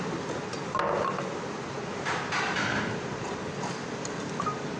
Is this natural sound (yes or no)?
yes